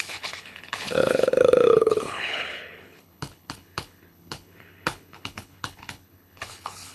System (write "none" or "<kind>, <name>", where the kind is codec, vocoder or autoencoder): codec, HILCodec